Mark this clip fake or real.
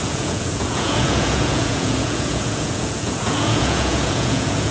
fake